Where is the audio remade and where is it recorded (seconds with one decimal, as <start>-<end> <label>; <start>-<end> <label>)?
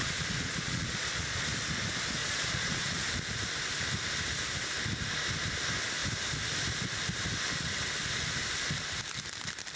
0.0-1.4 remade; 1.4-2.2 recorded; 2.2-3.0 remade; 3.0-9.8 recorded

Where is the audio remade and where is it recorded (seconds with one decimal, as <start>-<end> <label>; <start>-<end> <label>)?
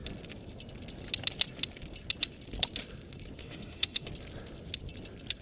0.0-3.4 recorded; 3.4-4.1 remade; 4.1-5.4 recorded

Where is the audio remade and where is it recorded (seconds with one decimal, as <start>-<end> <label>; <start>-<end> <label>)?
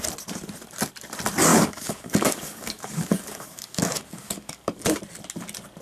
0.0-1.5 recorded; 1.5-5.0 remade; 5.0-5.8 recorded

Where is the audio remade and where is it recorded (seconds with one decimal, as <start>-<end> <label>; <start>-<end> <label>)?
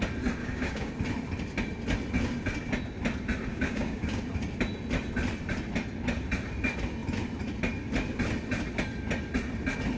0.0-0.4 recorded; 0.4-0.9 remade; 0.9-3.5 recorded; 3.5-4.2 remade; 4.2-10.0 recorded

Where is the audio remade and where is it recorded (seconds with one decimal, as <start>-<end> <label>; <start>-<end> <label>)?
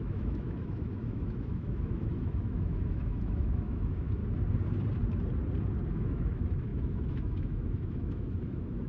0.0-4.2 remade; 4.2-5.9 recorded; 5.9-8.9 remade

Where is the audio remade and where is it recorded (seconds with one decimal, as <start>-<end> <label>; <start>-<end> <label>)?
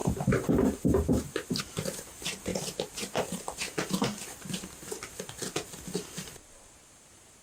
0.0-2.5 remade; 2.5-6.1 recorded; 6.1-7.4 remade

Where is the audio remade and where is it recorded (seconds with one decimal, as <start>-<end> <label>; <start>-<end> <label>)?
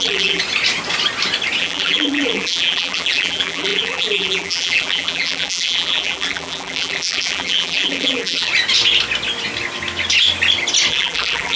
0.0-0.4 remade; 0.4-1.6 recorded; 1.6-8.5 remade; 8.5-10.9 recorded; 10.9-11.6 remade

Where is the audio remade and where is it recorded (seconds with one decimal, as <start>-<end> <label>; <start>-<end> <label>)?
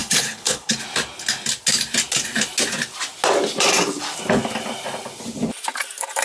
0.0-0.7 remade; 0.7-6.2 recorded